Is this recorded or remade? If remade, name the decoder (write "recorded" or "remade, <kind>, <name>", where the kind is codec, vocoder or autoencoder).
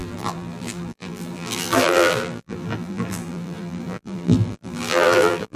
remade, vocoder, BigVGAN v2